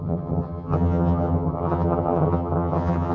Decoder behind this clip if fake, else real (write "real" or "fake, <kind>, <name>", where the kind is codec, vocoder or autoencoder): fake, vocoder, HiFi-GAN